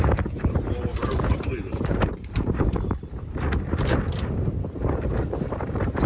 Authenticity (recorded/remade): remade